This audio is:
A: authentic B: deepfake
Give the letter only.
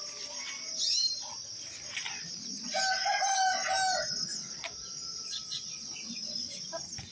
A